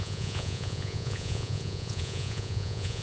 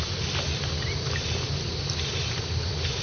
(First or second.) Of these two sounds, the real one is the second